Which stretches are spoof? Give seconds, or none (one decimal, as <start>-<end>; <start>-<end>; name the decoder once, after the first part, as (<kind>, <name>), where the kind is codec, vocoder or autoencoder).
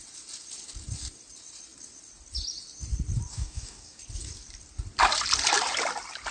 3.3-4.0 (codec, DAC)